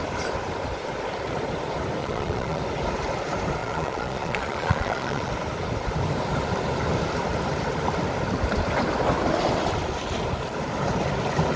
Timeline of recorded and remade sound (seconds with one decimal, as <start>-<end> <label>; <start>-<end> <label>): 0.0-2.0 recorded; 2.0-2.6 remade; 2.6-3.6 recorded; 3.6-5.3 remade; 5.3-11.6 recorded